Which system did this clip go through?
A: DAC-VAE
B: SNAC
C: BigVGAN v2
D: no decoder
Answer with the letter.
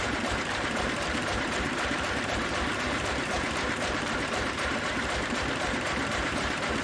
C